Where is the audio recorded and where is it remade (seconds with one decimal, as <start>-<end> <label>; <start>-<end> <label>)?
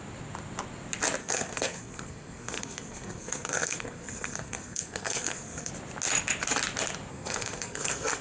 0.0-1.2 recorded; 1.2-5.7 remade; 5.7-7.1 recorded; 7.1-8.2 remade